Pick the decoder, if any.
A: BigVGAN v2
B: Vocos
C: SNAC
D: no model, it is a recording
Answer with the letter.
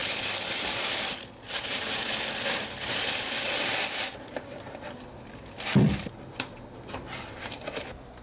D